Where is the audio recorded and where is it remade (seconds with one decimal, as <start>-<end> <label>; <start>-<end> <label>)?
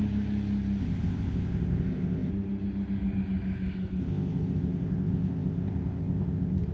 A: 0.0-0.8 recorded; 0.8-2.3 remade; 2.3-4.0 recorded; 4.0-6.7 remade